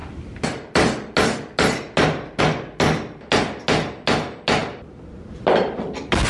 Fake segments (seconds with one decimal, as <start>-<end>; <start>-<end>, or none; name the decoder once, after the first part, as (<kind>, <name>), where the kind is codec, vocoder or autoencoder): none